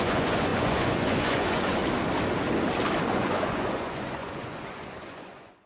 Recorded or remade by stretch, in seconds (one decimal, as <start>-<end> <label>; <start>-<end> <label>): 0.0-1.8 remade; 1.8-3.1 recorded; 3.1-5.7 remade